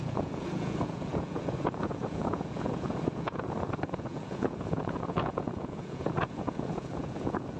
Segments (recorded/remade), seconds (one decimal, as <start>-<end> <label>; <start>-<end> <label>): 0.0-7.6 remade